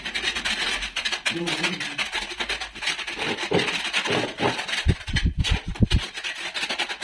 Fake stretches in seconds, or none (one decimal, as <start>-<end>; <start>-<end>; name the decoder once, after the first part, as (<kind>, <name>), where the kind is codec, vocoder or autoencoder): none